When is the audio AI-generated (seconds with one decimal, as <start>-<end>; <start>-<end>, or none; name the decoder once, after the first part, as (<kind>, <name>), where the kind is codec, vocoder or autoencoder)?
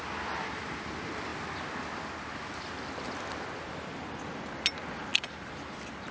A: none